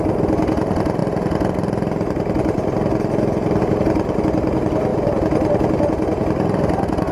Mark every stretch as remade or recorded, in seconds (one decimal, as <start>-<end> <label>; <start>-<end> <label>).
0.0-7.1 recorded